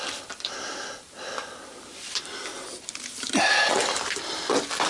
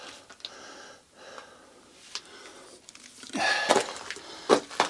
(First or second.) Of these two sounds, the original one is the second